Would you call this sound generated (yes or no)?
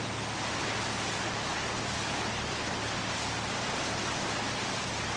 no